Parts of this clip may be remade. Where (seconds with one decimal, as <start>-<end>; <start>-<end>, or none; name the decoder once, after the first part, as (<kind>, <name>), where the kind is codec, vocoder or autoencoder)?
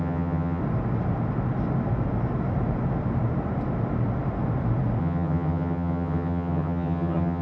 0.0-0.6 (vocoder, HiFi-GAN); 5.0-7.4